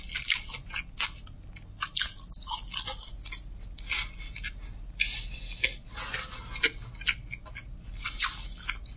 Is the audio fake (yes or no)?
no